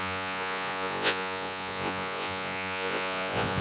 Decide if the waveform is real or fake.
fake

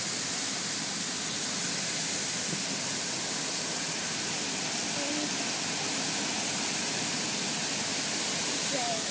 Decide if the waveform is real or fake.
real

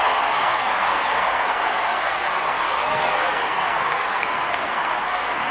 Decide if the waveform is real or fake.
fake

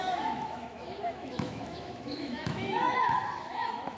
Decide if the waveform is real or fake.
fake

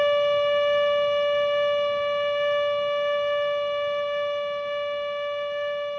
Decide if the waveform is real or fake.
real